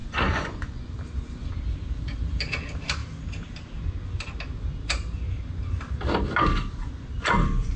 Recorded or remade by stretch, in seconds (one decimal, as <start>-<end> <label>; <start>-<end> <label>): 0.0-0.9 remade; 0.9-7.8 recorded